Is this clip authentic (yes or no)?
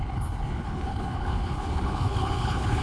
no